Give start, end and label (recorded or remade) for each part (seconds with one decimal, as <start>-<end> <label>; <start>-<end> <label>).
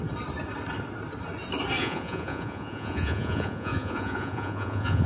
0.0-1.8 recorded; 1.8-5.1 remade